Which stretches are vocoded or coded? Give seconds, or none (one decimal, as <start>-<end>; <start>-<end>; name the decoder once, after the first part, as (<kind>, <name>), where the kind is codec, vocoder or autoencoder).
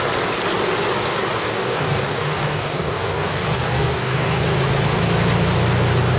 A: 1.4-4.4 (codec, DAC)